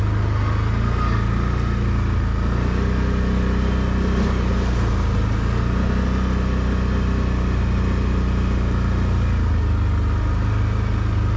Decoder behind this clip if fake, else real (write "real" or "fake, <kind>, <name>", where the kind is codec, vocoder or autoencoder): real